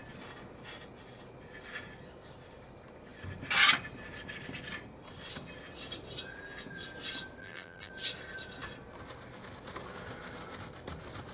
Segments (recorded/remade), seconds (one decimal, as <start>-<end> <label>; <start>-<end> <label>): 0.0-7.4 recorded; 7.4-7.9 remade; 7.9-11.3 recorded